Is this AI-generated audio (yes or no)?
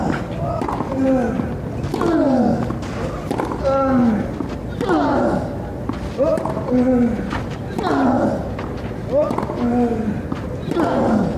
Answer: no